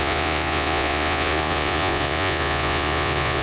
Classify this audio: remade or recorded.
remade